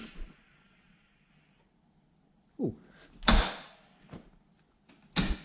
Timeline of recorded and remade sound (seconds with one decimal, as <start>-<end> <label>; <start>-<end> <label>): 0.0-1.3 remade; 1.3-5.4 recorded